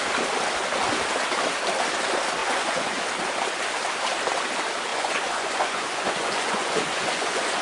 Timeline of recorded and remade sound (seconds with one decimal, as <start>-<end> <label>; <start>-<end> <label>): 0.0-2.4 recorded; 2.4-3.0 remade; 3.0-4.9 recorded; 4.9-7.6 remade